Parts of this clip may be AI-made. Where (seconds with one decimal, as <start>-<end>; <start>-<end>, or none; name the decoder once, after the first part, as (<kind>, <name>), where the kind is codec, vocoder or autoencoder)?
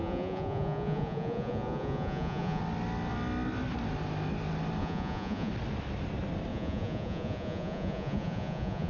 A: 0.0-2.6 (vocoder, Vocos); 4.8-5.5; 6.5-8.9